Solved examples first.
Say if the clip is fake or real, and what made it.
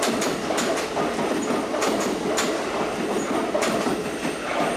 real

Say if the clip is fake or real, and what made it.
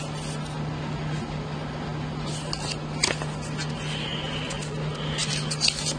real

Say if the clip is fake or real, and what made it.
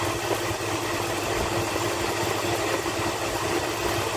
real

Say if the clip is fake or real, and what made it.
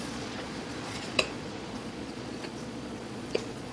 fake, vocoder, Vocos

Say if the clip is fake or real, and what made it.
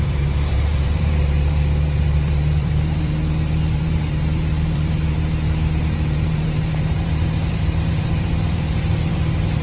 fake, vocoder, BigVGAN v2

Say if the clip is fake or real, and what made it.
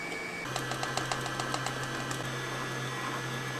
real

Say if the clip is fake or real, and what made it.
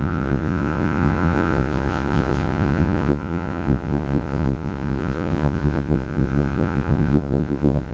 fake, vocoder, Vocos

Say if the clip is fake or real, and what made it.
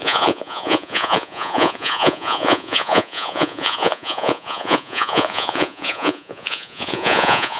fake, vocoder, Vocos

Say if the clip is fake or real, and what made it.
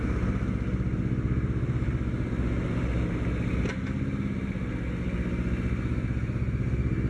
real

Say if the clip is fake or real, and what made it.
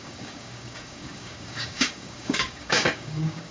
fake, codec, DAC